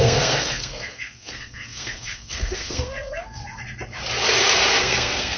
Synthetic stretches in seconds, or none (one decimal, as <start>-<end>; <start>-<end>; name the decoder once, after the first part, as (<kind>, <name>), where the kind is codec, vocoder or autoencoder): 0.0-3.4 (codec, SNAC); 4.8-5.4